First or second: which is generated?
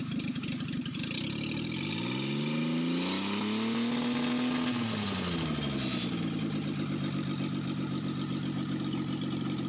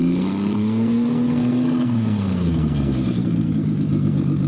second